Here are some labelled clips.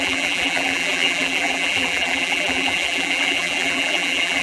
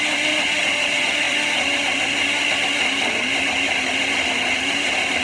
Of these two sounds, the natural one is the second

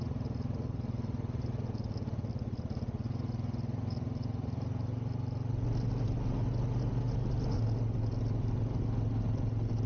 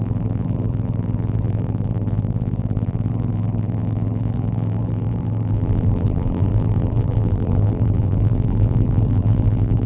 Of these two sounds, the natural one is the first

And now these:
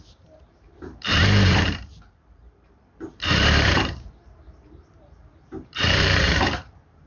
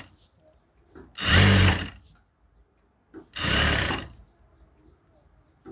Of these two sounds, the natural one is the second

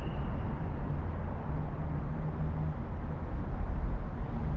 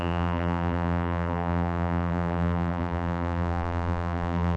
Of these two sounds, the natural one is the first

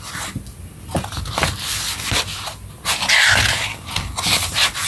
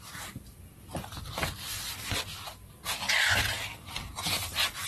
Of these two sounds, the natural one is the first